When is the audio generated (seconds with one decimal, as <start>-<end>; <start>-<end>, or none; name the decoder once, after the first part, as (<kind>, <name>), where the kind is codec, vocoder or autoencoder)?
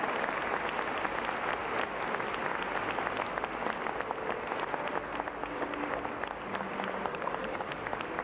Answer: 5.4-6.0 (codec, DAC); 7.1-7.7